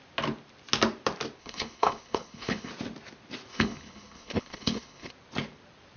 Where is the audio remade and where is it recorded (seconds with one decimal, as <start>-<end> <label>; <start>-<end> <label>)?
0.0-1.4 recorded; 1.4-2.7 remade; 2.7-3.5 recorded; 3.5-5.1 remade; 5.1-6.0 recorded